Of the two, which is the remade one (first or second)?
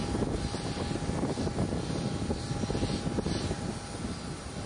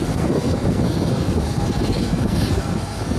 second